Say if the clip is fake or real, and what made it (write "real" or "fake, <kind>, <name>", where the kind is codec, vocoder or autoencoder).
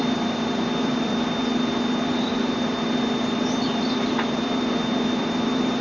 fake, vocoder, BigVGAN v2